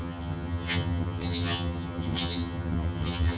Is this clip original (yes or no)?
no